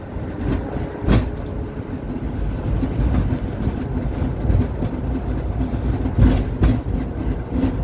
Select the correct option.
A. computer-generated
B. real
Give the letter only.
B